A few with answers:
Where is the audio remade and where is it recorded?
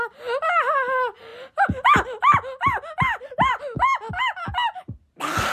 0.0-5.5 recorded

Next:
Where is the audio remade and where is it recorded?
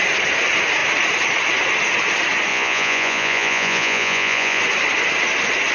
0.0-2.5 recorded; 2.5-4.6 remade; 4.6-5.7 recorded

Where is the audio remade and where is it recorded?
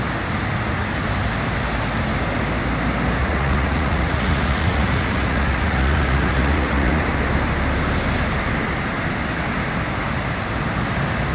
0.0-3.2 recorded; 3.2-7.0 remade; 7.0-11.3 recorded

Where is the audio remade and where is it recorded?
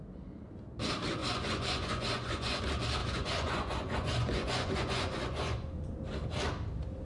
0.0-1.2 recorded; 1.2-2.6 remade; 2.6-3.0 recorded; 3.0-5.9 remade; 5.9-7.0 recorded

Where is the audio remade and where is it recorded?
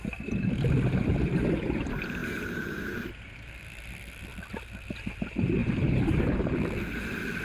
0.0-7.4 recorded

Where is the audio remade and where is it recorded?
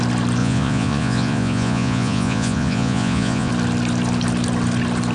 0.0-0.4 recorded; 0.4-3.5 remade; 3.5-5.1 recorded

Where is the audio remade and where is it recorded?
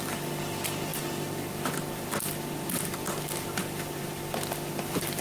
0.0-5.2 recorded